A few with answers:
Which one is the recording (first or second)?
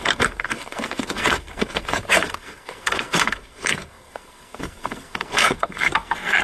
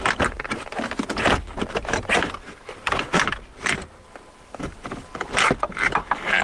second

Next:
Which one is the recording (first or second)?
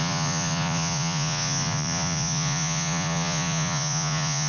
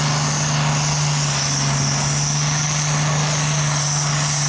second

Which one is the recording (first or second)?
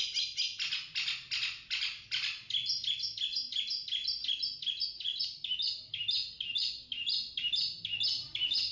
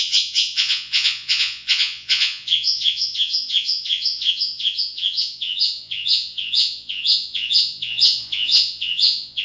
first